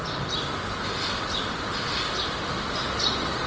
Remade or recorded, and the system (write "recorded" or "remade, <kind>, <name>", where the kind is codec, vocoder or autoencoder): recorded